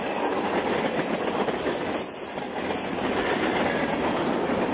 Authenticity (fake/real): real